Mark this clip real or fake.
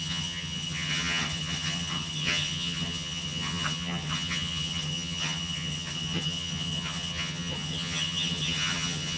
fake